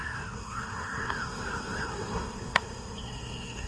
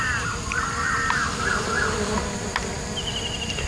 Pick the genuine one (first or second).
second